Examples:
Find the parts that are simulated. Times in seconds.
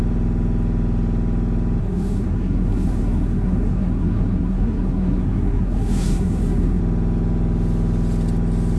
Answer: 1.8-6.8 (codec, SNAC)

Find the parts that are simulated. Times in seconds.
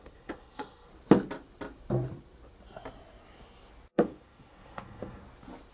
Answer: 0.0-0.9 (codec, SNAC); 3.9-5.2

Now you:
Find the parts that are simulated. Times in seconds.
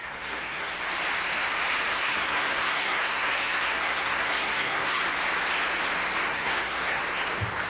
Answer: 0.0-0.7 (codec, SNAC); 1.9-5.0; 6.3-7.0